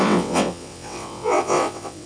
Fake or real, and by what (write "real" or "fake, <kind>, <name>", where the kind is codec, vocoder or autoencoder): fake, vocoder, WaveNeXt